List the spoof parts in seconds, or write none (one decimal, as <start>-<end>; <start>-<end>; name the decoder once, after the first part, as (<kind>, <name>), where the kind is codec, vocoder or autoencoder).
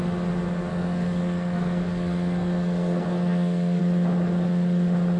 0.7-3.8 (codec, SNAC)